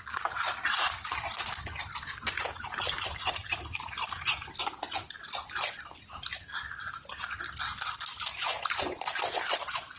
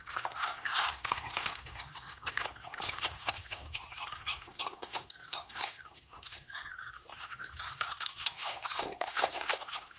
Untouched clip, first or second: first